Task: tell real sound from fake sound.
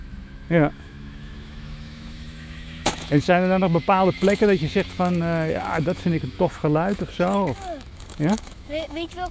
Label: fake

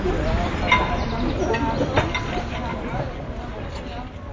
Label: real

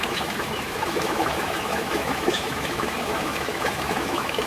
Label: fake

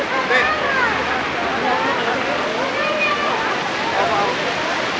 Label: real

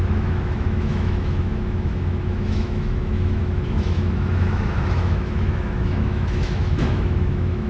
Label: fake